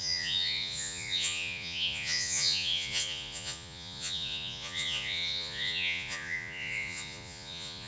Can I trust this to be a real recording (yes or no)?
no